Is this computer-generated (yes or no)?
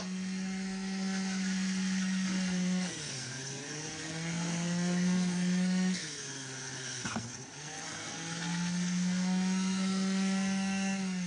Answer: yes